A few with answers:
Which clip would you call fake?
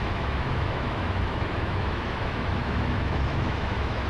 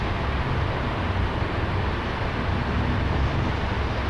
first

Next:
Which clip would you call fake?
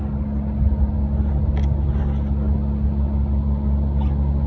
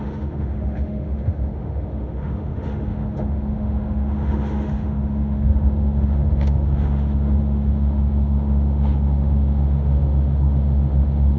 second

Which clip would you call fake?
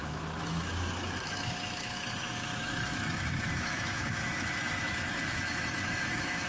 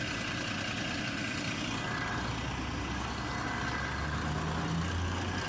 first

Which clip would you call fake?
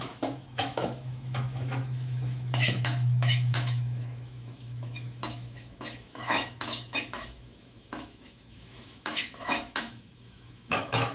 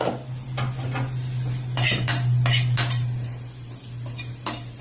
first